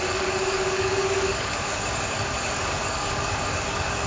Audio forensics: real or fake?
fake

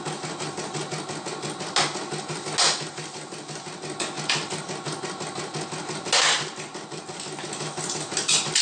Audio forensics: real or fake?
real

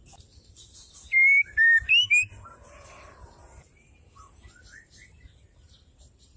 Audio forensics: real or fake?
real